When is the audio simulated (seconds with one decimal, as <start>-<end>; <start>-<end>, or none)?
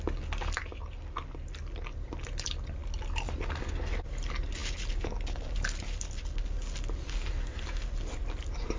none